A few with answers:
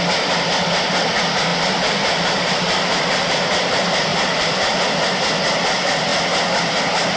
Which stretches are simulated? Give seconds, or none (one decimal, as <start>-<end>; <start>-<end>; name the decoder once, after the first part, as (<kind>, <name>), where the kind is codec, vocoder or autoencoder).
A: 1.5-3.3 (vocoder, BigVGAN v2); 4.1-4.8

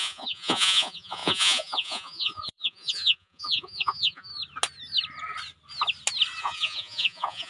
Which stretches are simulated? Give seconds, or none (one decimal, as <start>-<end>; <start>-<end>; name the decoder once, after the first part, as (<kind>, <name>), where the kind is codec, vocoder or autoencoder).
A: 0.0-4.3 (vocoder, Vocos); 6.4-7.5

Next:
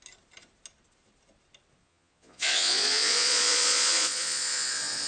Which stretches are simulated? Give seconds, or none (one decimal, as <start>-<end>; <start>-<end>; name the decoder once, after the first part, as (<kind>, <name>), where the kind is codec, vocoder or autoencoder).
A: 1.8-5.1 (vocoder, Vocos)

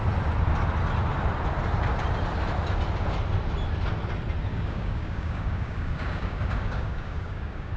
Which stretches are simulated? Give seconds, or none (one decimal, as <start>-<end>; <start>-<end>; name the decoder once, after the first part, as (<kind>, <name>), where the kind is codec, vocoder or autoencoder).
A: 4.5-7.8 (codec, DAC)